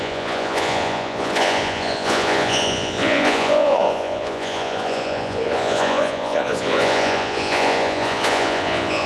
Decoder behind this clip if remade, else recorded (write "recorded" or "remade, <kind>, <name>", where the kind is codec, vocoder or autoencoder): remade, vocoder, Vocos